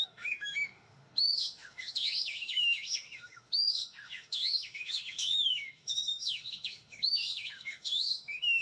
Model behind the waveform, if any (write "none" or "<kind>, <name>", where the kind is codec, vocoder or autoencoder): autoencoder, DAC-VAE